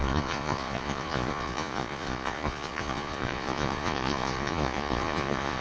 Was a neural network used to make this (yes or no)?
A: yes